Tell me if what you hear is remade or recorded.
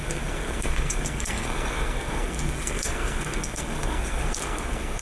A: remade